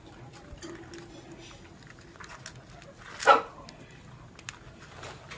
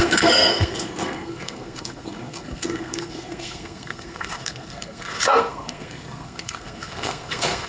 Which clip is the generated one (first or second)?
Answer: second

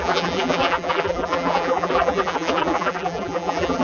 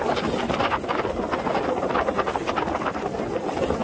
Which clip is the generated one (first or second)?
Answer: first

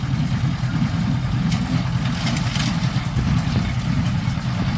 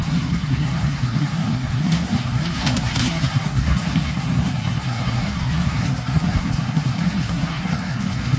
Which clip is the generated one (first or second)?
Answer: second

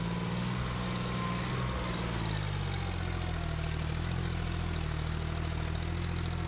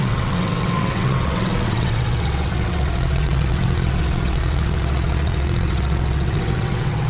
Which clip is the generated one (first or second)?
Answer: second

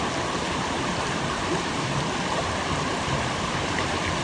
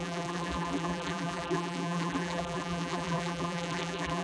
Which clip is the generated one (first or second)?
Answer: second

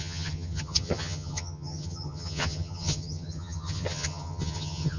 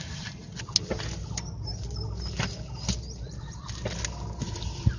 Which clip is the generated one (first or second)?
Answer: first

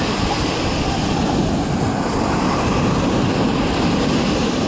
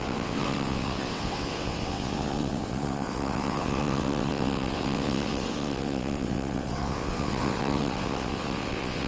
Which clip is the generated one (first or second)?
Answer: second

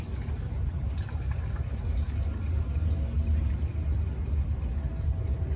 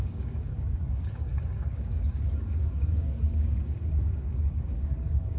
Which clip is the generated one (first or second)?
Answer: second